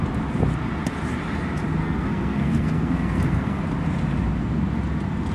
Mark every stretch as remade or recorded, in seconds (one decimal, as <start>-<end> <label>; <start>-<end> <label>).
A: 0.0-1.8 recorded; 1.8-3.6 remade; 3.6-5.3 recorded